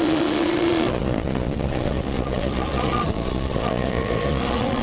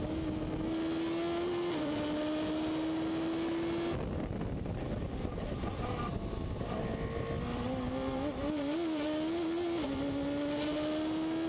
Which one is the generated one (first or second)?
first